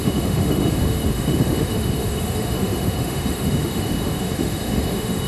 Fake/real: fake